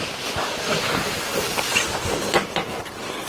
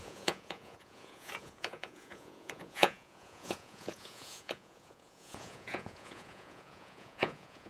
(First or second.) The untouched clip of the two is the first